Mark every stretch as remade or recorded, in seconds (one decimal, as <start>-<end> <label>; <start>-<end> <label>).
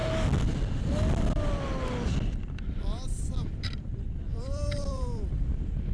0.0-3.5 recorded; 3.5-5.9 remade